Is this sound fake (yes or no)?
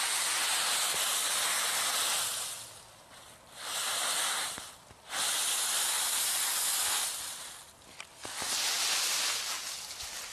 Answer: no